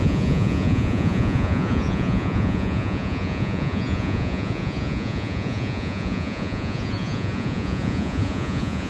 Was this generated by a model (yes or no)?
yes